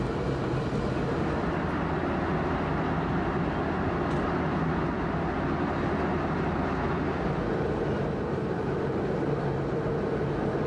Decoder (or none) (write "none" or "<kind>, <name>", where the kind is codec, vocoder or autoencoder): none